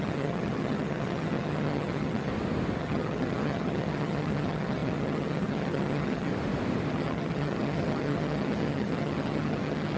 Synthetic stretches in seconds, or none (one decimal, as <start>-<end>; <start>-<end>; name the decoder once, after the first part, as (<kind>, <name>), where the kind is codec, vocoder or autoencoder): 0.0-2.3 (vocoder, HiFi-GAN); 2.8-6.3; 6.9-10.0